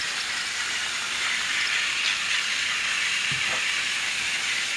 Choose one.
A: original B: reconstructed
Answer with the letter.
A